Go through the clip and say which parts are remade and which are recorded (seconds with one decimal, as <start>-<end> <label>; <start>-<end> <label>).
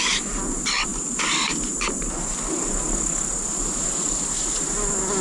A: 0.0-5.2 recorded